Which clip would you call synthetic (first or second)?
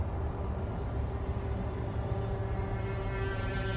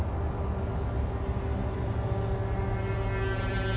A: first